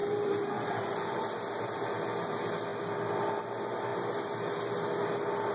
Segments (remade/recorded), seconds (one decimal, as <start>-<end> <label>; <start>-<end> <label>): 0.0-1.2 remade; 1.2-5.5 recorded